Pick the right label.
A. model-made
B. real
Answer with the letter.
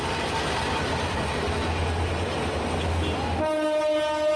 B